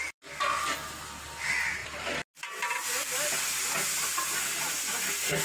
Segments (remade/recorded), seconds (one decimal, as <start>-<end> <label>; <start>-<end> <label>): 0.0-5.4 recorded